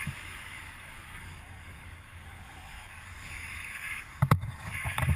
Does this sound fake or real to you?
fake